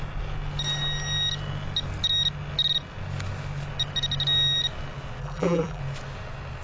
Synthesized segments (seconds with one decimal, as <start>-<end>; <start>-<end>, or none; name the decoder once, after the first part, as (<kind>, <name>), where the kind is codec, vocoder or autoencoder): 5.2-5.8 (vocoder, BigVGAN v2)